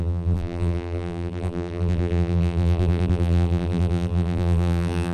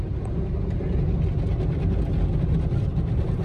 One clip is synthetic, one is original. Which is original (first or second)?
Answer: second